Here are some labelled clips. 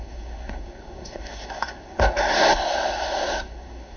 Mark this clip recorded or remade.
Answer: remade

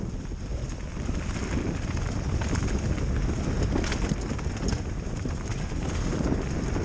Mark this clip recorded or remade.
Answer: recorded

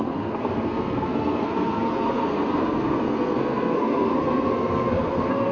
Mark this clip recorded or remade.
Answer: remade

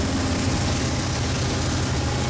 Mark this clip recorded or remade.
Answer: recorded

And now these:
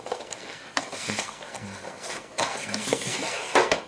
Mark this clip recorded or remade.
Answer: remade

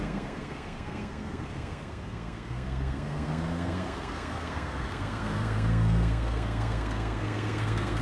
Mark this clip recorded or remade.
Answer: remade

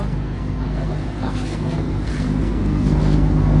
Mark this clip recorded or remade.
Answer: remade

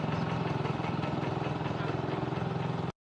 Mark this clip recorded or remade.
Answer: recorded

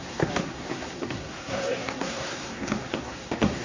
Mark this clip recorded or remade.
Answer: remade